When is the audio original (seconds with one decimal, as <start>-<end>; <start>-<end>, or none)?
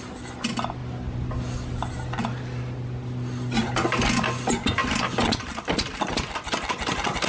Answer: 0.0-7.3